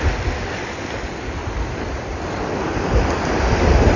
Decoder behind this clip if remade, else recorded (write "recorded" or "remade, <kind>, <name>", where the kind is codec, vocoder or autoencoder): recorded